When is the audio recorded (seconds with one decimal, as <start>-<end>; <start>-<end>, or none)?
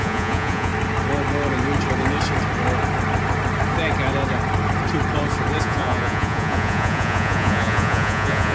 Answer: 0.7-5.6